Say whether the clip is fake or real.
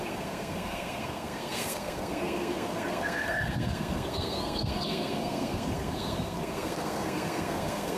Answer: fake